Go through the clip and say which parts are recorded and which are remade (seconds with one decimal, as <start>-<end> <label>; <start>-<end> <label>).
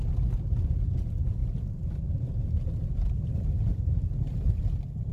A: 0.0-1.4 recorded; 1.4-4.5 remade; 4.5-5.1 recorded